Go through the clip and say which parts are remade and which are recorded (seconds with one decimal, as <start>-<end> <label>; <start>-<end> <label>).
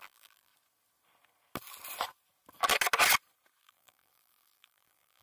0.0-0.5 remade; 0.5-3.6 recorded; 3.6-5.2 remade